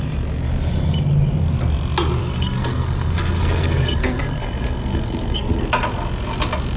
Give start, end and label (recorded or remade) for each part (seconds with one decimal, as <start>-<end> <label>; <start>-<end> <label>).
0.0-2.2 recorded; 2.2-5.6 remade; 5.6-6.8 recorded